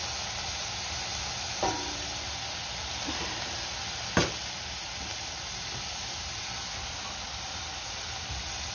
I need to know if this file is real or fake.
real